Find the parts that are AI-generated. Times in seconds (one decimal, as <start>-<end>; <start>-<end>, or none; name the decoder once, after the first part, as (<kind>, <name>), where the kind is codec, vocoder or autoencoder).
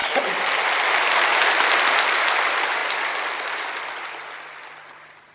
none